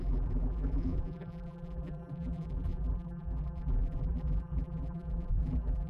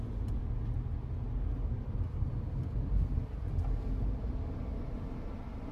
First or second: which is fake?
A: first